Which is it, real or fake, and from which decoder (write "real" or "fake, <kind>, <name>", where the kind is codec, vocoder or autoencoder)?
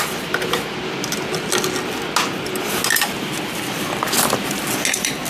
real